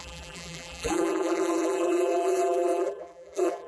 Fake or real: fake